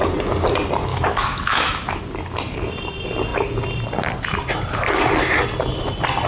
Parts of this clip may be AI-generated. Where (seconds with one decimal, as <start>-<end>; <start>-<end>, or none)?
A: 0.9-2.0